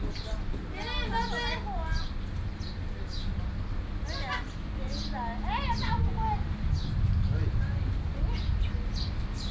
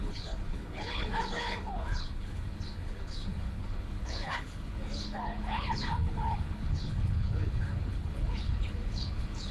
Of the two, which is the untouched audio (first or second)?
first